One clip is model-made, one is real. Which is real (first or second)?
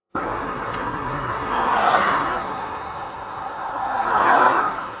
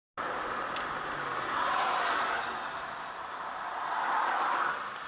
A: second